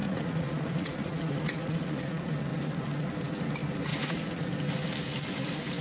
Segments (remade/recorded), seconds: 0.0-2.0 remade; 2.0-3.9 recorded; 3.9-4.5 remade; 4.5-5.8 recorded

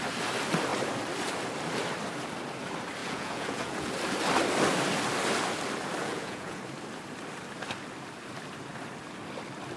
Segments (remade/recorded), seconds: 0.0-3.0 recorded; 3.0-3.9 remade; 3.9-6.0 recorded; 6.0-6.6 remade; 6.6-9.8 recorded

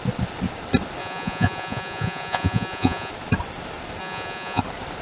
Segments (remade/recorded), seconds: 0.0-1.0 recorded; 1.0-3.1 remade; 3.1-4.0 recorded; 4.0-4.6 remade; 4.6-5.0 recorded

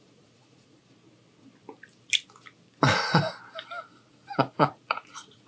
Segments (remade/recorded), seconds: 0.0-0.8 remade; 0.8-4.1 recorded; 4.1-5.5 remade

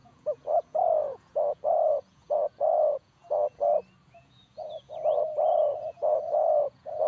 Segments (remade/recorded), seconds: 0.0-3.2 remade; 3.2-4.0 recorded; 4.0-7.1 remade

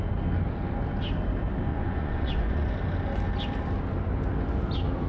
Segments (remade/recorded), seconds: 0.0-1.7 recorded; 1.7-2.7 remade; 2.7-5.1 recorded